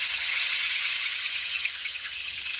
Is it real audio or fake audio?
fake